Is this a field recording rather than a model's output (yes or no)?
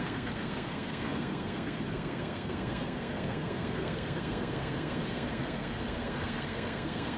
no